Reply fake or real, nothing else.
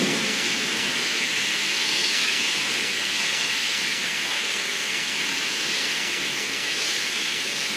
fake